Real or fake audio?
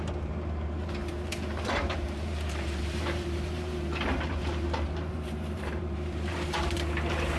fake